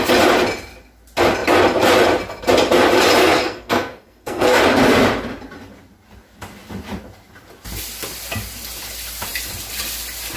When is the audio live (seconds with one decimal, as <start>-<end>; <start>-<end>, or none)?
0.0-3.2; 4.6-10.4